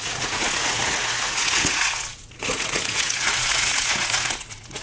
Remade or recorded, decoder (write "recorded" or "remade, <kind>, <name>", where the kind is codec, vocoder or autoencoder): remade, vocoder, Vocos